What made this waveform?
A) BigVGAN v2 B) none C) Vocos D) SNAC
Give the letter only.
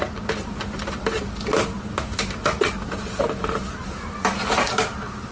B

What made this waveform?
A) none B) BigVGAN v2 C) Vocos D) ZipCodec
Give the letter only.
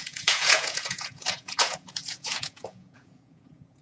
C